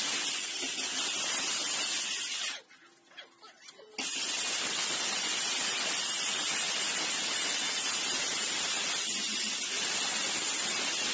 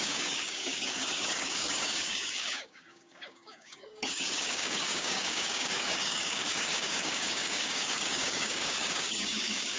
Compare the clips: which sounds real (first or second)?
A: first